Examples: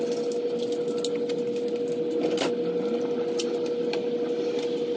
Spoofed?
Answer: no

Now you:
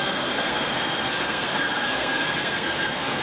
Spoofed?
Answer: yes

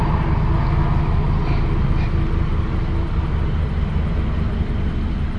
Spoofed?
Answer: no